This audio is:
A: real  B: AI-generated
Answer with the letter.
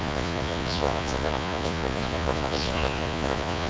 B